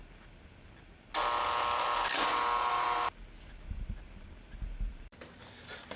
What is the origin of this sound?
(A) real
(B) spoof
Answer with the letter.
A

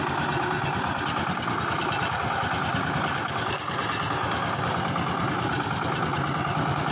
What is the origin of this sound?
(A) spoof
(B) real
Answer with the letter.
B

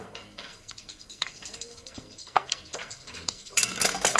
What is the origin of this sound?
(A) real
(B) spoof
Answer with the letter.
B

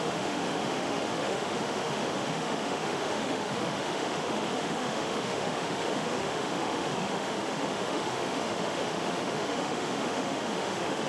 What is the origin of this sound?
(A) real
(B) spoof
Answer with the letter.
B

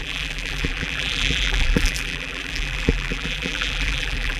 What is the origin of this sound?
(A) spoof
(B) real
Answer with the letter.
A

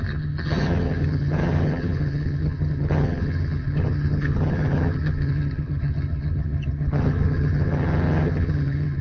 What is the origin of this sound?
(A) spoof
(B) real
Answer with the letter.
A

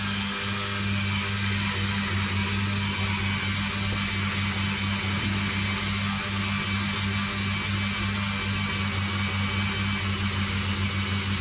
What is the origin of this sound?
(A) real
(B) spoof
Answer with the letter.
A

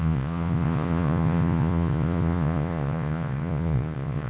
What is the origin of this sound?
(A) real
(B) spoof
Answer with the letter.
B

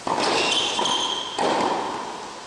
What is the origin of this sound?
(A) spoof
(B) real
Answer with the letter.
B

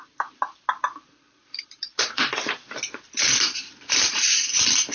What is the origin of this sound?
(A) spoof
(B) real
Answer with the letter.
A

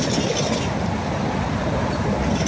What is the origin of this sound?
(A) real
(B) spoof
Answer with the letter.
A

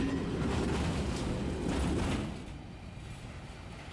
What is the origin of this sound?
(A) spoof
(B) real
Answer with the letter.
B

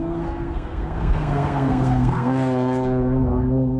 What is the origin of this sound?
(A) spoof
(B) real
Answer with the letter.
A